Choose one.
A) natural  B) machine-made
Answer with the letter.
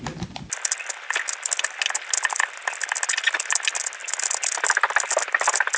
A